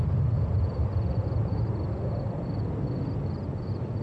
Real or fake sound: real